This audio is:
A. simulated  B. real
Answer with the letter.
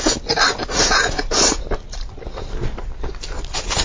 B